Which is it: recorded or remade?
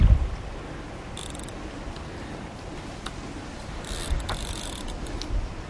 recorded